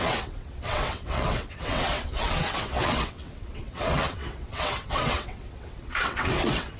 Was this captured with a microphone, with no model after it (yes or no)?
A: no